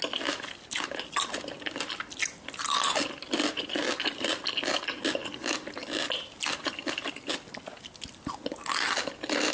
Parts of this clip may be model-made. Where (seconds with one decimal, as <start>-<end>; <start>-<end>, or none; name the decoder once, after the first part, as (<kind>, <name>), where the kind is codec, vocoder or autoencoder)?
none